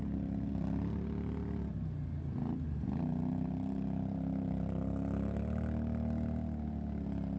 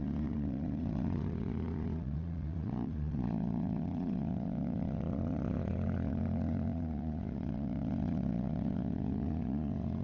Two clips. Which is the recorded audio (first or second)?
first